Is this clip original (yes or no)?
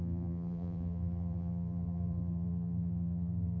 no